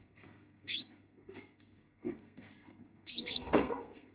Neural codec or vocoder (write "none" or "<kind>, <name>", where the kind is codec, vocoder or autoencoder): codec, SNAC